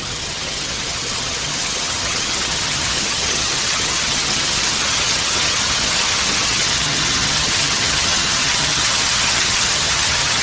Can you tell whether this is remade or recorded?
remade